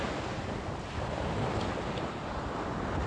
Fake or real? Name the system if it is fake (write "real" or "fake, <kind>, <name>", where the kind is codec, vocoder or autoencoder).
real